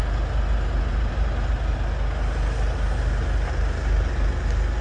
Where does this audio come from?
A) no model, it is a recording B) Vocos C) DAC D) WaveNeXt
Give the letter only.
A